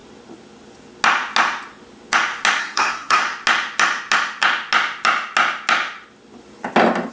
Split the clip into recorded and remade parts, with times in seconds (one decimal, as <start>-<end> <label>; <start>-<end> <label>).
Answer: 0.0-2.6 recorded; 2.6-3.2 remade; 3.2-7.1 recorded